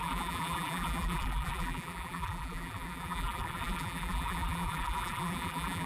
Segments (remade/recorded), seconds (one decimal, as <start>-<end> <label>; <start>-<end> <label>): 0.0-5.9 remade